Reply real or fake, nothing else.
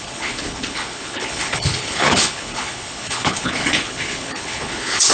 fake